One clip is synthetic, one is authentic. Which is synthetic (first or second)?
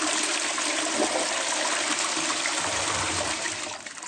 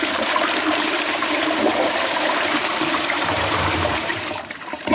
second